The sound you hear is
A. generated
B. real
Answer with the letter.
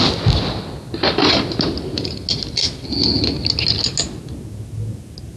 B